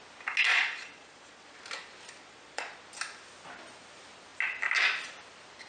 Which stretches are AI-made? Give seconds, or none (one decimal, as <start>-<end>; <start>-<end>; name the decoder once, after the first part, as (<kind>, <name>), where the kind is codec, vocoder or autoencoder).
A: 0.5-1.6 (vocoder, Vocos); 2.2-2.8